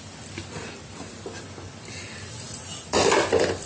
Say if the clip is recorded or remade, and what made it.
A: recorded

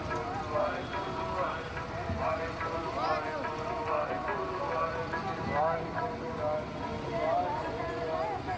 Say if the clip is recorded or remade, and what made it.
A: recorded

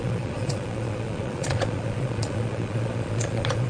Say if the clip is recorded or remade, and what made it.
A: remade, vocoder, Vocos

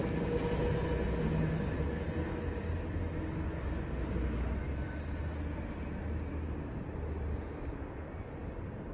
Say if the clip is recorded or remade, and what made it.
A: recorded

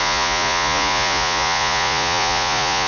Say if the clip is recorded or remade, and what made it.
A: remade, vocoder, Vocos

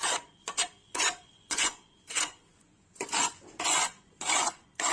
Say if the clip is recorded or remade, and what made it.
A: remade, vocoder, Vocos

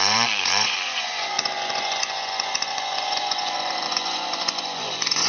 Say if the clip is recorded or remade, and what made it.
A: remade, vocoder, Vocos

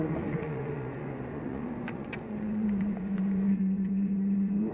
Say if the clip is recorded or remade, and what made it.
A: remade, vocoder, Vocos